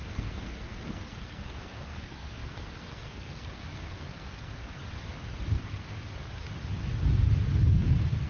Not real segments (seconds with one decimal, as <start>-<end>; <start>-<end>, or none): 0.0-4.8; 5.5-5.9; 7.7-8.3